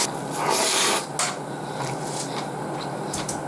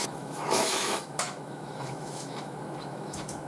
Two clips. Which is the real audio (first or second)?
first